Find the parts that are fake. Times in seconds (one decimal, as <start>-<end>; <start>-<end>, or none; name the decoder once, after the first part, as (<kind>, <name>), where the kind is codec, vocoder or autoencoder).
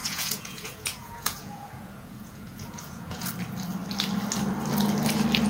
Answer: 0.0-3.3 (vocoder, Vocos)